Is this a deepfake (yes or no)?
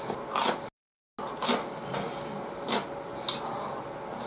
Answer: no